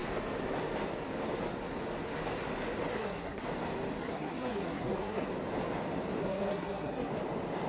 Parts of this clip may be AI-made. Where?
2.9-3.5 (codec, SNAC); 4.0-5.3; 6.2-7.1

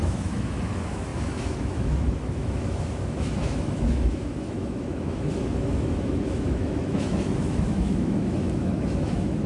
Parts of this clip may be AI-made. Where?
0.0-9.5 (autoencoder, DAC-VAE)